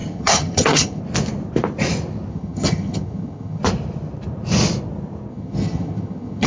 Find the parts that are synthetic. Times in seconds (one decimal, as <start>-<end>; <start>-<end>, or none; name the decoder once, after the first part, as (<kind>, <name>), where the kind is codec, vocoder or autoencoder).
0.0-1.0 (vocoder, HiFi-GAN); 2.3-3.6; 5.3-6.5